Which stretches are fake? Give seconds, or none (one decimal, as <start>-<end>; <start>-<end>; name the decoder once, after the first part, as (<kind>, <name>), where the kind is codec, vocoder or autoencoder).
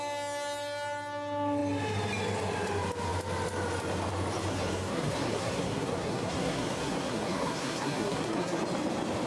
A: 4.5-8.6 (codec, SNAC)